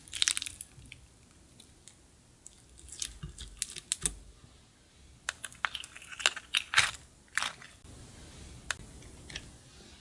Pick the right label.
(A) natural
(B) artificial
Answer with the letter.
A